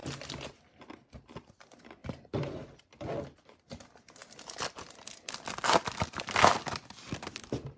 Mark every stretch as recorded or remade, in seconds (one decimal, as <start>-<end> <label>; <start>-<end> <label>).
0.0-2.0 recorded; 2.0-2.5 remade; 2.5-7.8 recorded